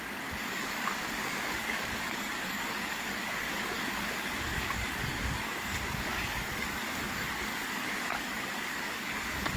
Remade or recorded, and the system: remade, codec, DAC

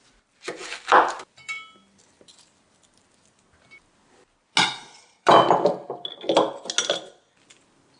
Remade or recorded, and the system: recorded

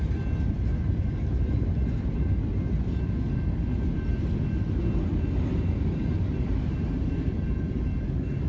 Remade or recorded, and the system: recorded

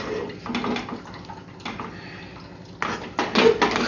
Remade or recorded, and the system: recorded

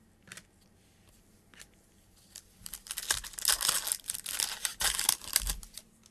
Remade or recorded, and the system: recorded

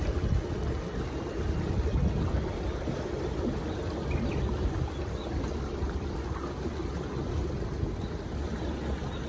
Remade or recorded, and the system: recorded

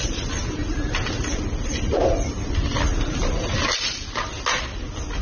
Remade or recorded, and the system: recorded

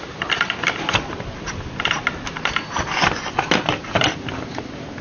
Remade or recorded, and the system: recorded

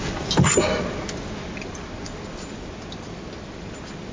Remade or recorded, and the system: recorded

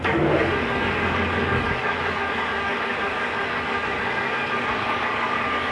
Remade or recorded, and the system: remade, codec, DAC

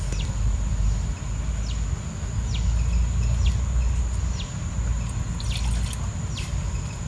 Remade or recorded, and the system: recorded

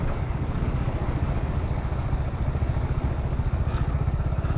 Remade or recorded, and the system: remade, codec, DAC